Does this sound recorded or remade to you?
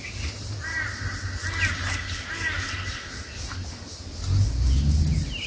recorded